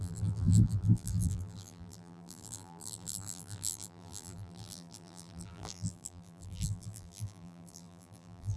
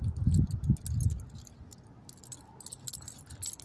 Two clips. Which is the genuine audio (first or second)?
second